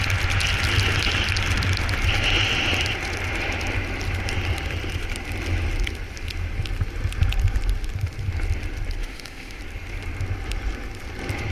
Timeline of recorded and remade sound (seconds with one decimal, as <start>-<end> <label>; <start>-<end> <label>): 0.0-9.0 recorded; 9.0-9.6 remade; 9.6-11.5 recorded